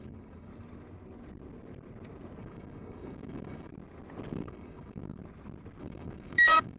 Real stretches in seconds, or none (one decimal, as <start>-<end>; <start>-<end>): 0.5-2.4; 3.7-4.3; 5.2-5.8